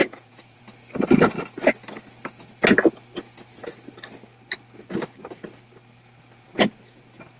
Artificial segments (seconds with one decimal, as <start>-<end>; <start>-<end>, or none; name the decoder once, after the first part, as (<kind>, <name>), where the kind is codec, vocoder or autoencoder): 0.0-0.6 (vocoder, Vocos)